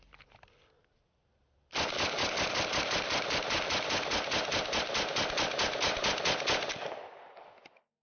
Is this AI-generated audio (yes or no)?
no